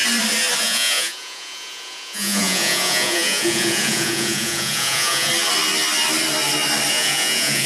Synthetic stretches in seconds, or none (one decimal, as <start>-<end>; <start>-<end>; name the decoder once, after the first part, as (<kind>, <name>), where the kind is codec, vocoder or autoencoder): 0.6-5.3 (vocoder, Vocos); 6.9-7.7